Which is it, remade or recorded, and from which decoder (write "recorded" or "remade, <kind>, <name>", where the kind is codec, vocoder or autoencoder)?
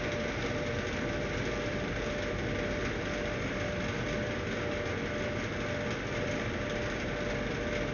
recorded